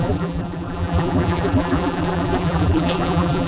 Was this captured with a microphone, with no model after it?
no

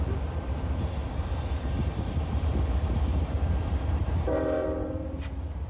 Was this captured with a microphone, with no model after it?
no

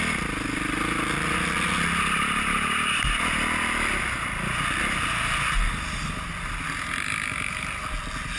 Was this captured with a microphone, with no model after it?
yes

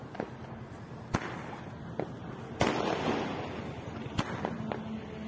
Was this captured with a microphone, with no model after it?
yes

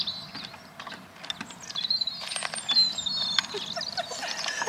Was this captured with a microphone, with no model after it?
yes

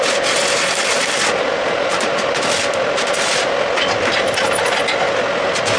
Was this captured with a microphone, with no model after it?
yes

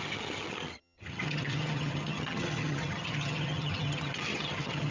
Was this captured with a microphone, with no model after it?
no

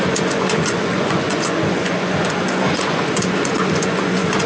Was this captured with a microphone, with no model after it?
no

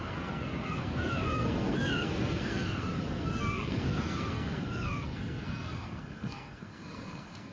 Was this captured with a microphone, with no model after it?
no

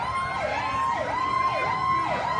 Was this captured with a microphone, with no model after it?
yes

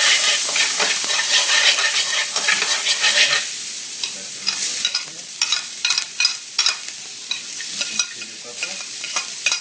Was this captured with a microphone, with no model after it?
no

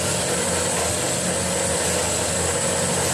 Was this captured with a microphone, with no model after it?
yes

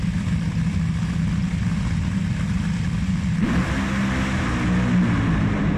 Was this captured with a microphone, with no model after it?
yes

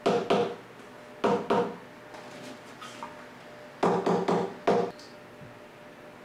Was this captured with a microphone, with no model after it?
yes